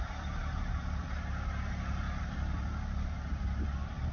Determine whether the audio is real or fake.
real